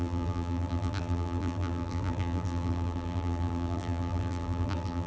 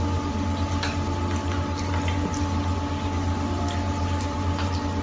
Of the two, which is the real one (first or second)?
second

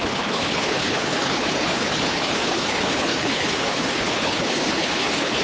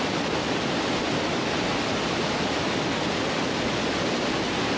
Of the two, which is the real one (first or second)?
second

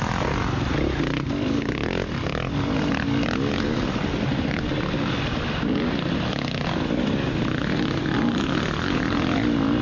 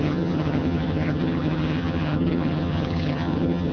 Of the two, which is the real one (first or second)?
first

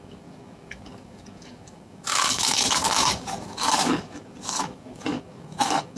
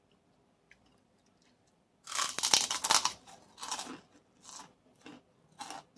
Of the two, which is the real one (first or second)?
second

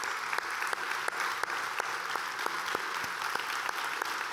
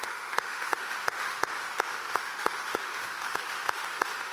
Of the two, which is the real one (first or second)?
first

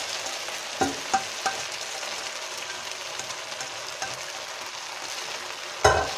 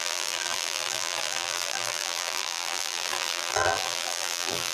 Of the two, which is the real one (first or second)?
first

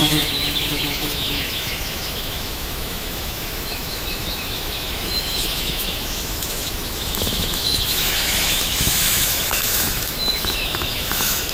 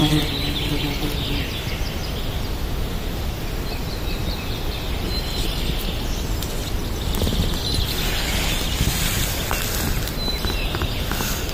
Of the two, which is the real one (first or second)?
second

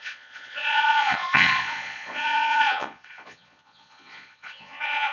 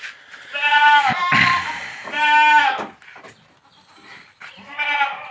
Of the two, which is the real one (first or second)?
second